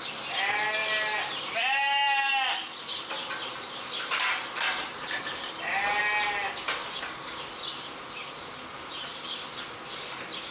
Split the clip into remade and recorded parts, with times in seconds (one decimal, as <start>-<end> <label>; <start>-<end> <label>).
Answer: 0.0-0.8 recorded; 0.8-5.5 remade; 5.5-6.0 recorded; 6.0-7.3 remade; 7.3-10.5 recorded